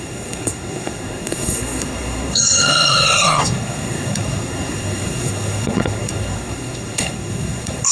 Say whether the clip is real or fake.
fake